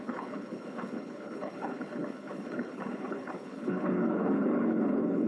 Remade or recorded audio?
remade